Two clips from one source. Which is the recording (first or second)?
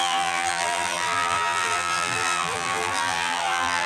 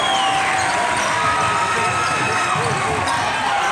second